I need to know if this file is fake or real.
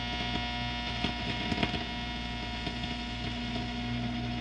real